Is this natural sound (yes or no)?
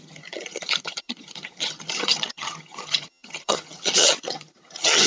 no